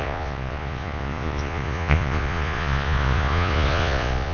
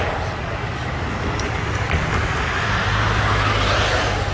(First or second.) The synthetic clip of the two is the first